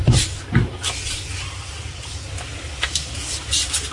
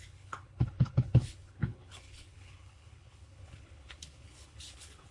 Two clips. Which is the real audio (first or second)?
first